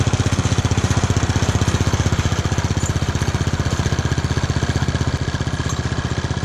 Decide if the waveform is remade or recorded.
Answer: recorded